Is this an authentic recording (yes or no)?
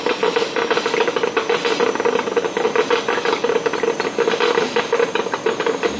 yes